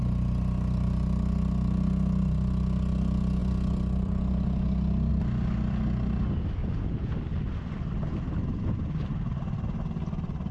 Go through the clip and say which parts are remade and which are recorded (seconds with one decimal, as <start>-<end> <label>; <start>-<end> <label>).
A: 0.0-6.6 recorded; 6.6-7.1 remade; 7.1-10.5 recorded